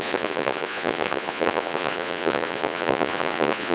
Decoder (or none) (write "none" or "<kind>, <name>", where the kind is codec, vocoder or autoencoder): vocoder, Vocos